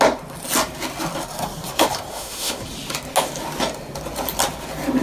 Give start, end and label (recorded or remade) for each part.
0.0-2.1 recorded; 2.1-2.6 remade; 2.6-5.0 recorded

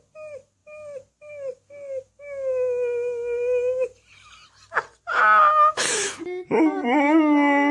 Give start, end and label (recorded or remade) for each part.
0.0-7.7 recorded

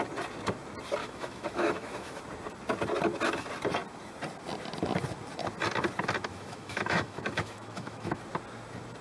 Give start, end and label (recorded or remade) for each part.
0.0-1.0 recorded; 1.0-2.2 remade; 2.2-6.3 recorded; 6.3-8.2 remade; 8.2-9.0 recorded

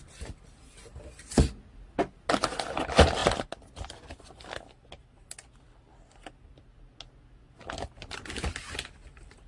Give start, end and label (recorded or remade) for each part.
0.0-9.5 recorded

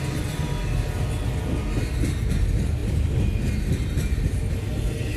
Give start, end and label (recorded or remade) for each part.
0.0-5.2 recorded

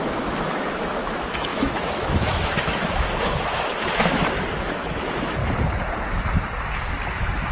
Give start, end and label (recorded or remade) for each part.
0.0-5.4 remade; 5.4-7.1 recorded; 7.1-7.5 remade